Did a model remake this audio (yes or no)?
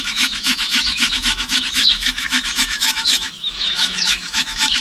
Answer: yes